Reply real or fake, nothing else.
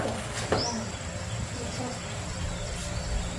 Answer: real